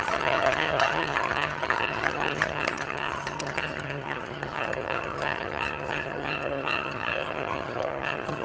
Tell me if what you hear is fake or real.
fake